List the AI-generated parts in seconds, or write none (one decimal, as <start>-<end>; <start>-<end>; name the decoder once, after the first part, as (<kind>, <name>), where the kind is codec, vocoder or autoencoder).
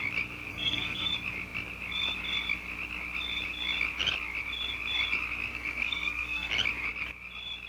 0.5-1.1 (codec, SNAC); 5.5-6.5